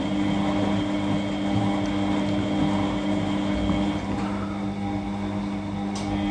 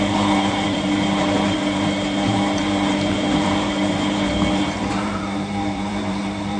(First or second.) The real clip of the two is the first